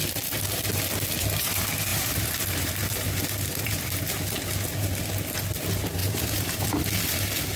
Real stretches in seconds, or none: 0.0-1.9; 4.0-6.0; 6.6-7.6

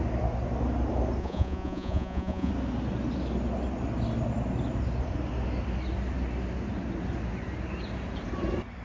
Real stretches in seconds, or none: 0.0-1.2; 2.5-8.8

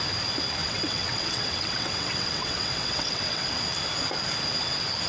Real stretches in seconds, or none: 0.0-0.6; 3.5-5.1

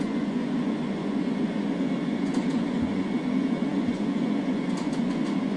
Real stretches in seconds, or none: none